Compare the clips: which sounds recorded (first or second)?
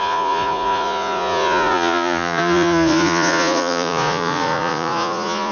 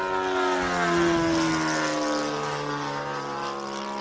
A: second